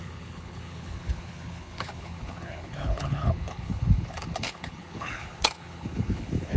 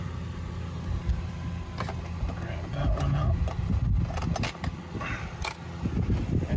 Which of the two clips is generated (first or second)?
first